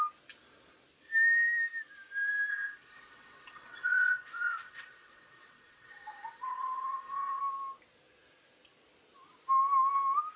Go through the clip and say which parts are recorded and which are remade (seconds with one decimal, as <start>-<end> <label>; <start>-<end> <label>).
0.0-2.5 recorded; 2.5-7.4 remade; 7.4-10.4 recorded